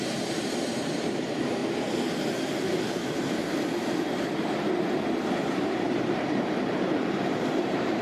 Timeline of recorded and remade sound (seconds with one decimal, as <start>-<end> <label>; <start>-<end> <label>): 0.0-1.6 remade; 1.6-5.5 recorded; 5.5-8.0 remade